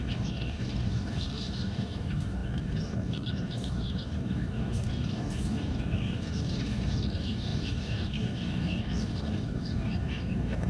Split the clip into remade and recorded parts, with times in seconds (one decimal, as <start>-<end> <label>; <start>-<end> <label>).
0.0-10.7 remade